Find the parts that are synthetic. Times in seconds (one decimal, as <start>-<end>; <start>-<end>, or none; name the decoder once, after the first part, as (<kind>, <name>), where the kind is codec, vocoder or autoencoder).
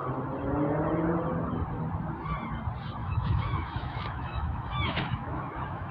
3.0-5.9 (autoencoder, DAC-VAE)